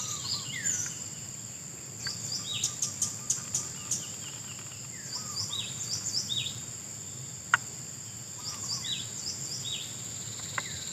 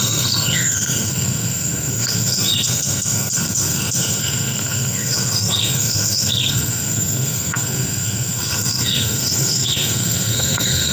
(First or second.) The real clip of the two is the first